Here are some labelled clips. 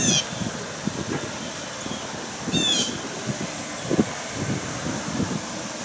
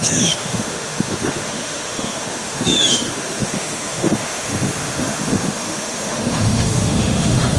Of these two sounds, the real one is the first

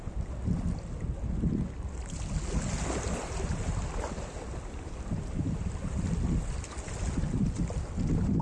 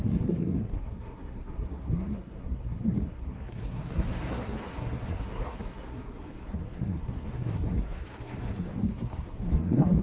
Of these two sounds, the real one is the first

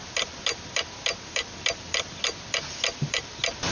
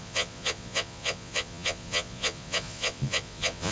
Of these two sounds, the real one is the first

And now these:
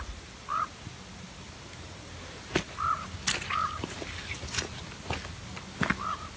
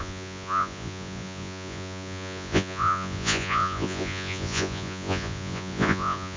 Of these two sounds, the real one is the first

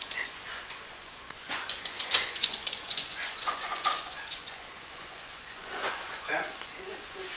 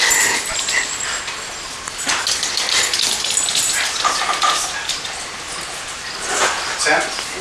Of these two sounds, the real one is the second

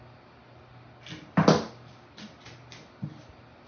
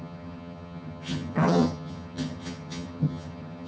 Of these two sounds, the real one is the first